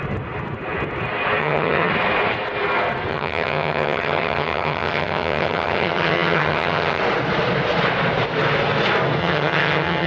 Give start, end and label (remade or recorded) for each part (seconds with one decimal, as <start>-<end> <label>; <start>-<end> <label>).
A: 0.0-1.4 recorded; 1.4-1.9 remade; 1.9-3.1 recorded; 3.1-7.0 remade; 7.0-9.2 recorded; 9.2-10.1 remade